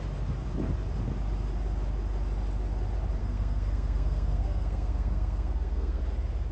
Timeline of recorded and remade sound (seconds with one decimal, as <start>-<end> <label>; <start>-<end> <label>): 0.0-3.2 recorded; 3.2-6.0 remade; 6.0-6.5 recorded